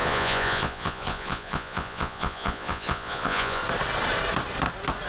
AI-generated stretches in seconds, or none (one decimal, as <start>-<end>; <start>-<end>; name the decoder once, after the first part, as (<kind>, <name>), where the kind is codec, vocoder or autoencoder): 0.0-3.6 (vocoder, Vocos)

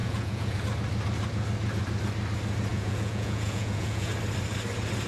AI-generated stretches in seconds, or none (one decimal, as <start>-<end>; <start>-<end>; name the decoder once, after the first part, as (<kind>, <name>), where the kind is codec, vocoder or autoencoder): 0.0-0.6 (vocoder, Vocos); 2.7-4.1

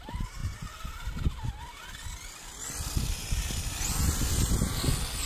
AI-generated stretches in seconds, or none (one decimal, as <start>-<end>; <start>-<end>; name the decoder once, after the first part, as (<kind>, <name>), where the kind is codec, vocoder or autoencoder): none

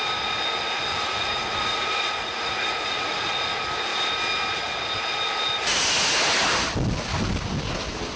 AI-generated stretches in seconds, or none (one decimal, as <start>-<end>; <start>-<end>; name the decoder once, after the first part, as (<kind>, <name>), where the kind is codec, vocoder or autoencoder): 0.9-3.3 (vocoder, Vocos)